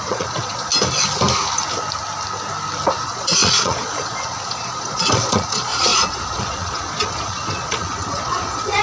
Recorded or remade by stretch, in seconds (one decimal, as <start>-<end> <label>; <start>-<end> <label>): 0.0-0.7 remade; 0.7-3.0 recorded; 3.0-8.8 remade